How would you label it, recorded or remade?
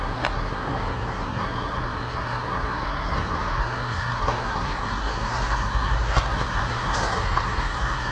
remade